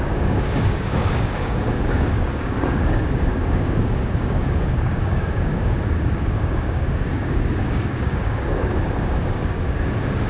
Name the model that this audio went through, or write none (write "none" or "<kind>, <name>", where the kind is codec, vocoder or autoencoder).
codec, DAC